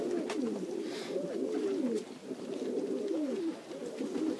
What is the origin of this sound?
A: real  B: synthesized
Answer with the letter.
A